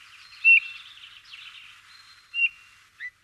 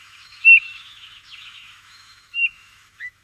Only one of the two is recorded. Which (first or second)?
first